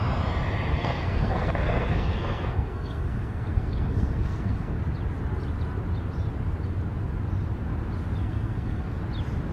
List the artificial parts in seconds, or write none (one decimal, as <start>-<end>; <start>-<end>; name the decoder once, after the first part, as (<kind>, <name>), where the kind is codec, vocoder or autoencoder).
0.7-4.8 (codec, SNAC); 8.2-9.0